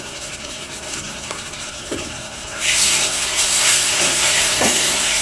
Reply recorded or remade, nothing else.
remade